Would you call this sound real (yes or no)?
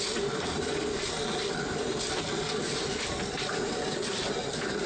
yes